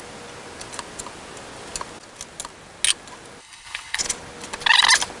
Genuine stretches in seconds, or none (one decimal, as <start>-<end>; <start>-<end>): 0.0-3.4; 4.0-5.2